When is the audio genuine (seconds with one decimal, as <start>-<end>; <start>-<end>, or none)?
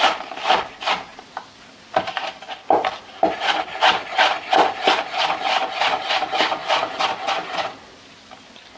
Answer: 0.0-8.8